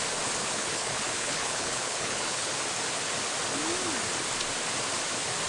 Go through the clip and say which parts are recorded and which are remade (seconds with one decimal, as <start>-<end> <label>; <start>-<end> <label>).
0.0-0.4 recorded; 0.4-2.5 remade; 2.5-5.5 recorded